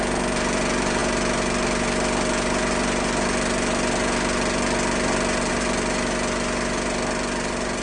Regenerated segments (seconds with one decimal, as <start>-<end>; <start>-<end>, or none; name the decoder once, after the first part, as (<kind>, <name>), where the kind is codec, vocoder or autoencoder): none